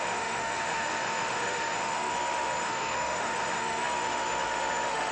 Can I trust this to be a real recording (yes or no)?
no